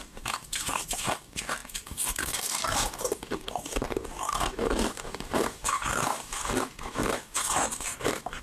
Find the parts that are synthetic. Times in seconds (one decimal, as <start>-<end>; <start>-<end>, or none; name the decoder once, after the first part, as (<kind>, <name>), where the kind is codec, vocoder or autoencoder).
0.0-8.4 (codec, DAC)